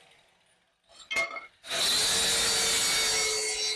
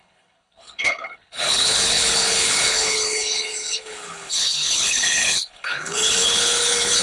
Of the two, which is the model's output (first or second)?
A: second